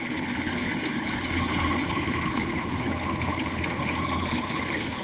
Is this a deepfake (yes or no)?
yes